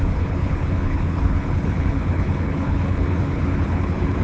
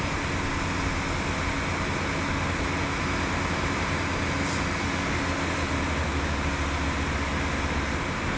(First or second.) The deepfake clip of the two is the first